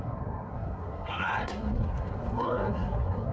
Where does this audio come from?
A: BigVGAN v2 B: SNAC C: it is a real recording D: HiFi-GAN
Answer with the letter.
B